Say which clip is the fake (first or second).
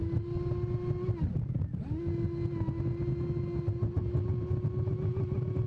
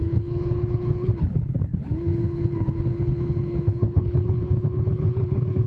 second